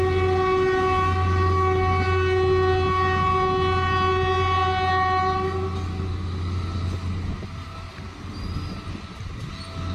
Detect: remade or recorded recorded